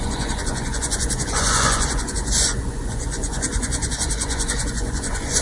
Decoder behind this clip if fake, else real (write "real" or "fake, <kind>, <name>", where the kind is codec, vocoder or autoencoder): fake, vocoder, Vocos